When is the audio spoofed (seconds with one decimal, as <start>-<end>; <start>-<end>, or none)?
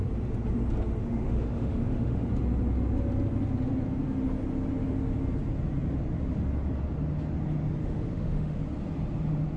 1.0-2.3; 7.8-8.6